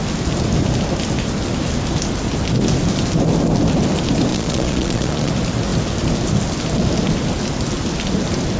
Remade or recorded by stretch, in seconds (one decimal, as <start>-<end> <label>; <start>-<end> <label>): 0.0-4.3 recorded; 4.3-5.3 remade; 5.3-8.6 recorded